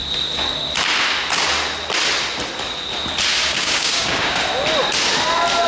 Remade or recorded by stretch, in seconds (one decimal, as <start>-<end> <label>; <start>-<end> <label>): 0.0-3.4 recorded; 3.4-4.4 remade; 4.4-5.7 recorded